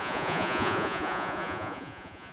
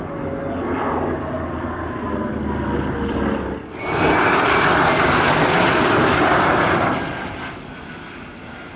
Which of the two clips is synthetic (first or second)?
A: first